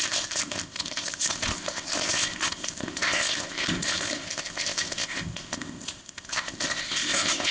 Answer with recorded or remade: remade